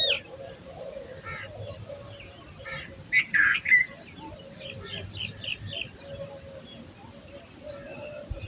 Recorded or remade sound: recorded